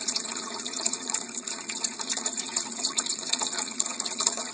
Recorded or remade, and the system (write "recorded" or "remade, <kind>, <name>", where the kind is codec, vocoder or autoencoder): remade, vocoder, Vocos